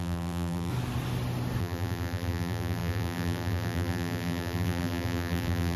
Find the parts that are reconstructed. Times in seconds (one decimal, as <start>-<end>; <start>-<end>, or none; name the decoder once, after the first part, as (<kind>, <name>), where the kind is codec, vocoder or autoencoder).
0.0-0.7 (vocoder, BigVGAN v2); 1.6-5.8